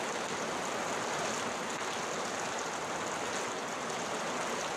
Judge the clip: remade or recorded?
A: recorded